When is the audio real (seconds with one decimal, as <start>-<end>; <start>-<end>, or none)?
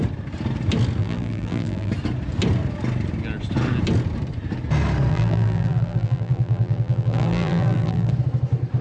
0.0-1.0; 1.9-5.1; 8.1-8.8